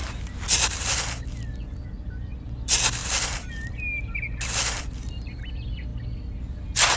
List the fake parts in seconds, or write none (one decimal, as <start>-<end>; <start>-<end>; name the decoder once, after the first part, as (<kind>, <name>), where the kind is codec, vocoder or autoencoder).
none